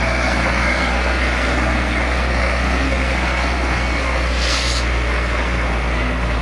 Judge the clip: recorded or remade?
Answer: remade